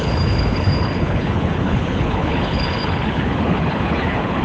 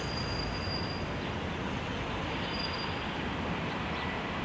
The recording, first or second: second